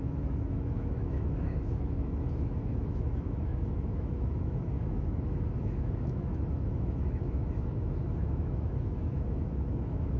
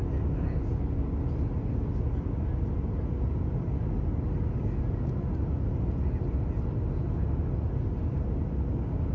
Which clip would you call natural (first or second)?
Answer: second